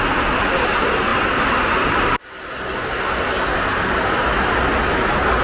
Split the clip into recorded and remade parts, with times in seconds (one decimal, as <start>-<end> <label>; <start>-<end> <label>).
0.0-5.4 recorded